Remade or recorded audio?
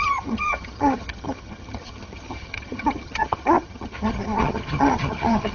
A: remade